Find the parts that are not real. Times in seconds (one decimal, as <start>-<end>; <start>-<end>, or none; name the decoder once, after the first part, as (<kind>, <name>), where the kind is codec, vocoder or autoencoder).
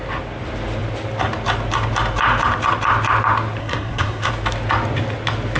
3.6-4.3 (codec, SNAC)